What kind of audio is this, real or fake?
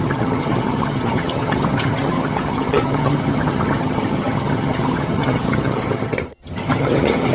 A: fake